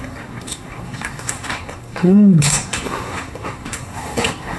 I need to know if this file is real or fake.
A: fake